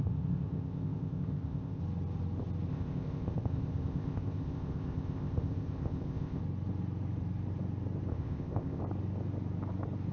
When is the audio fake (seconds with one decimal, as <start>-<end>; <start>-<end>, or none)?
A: 0.0-1.8; 2.7-6.4; 8.1-8.8